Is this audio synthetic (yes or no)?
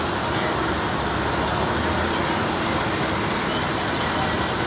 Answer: no